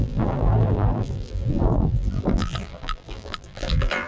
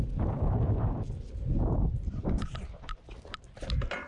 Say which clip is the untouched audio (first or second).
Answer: second